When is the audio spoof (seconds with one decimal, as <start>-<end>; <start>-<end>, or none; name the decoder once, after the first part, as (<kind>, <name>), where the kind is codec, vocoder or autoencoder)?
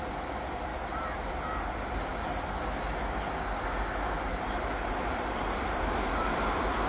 4.3-5.9 (vocoder, BigVGAN v2)